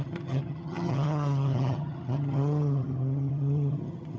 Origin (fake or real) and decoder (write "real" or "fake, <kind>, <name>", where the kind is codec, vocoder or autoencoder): fake, vocoder, HiFi-GAN